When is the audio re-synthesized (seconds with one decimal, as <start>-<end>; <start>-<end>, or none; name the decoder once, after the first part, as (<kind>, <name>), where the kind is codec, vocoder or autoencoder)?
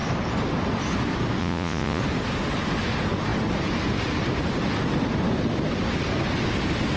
1.4-2.0 (vocoder, Vocos)